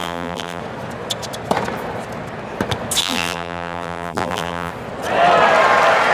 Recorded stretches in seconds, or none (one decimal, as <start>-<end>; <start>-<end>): 0.6-3.0; 4.7-6.1